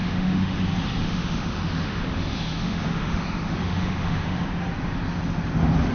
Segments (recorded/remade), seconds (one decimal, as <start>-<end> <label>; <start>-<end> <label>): 0.0-0.6 remade; 0.6-1.0 recorded; 1.0-4.5 remade; 4.5-5.9 recorded